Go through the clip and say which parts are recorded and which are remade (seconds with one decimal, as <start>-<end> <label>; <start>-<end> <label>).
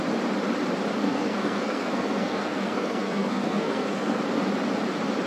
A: 0.0-1.0 recorded; 1.0-4.2 remade; 4.2-5.3 recorded